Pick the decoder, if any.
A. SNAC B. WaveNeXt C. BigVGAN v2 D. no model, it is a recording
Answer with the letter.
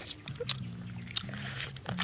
D